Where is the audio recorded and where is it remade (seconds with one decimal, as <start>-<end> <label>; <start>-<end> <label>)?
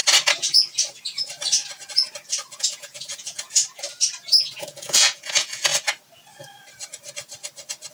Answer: 0.0-2.6 recorded; 2.6-3.6 remade; 3.6-4.6 recorded; 4.6-5.7 remade; 5.7-7.9 recorded